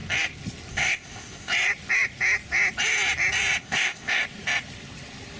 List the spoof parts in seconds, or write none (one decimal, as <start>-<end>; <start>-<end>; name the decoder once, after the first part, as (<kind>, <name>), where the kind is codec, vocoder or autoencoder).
0.7-1.5 (codec, ZipCodec); 3.6-4.2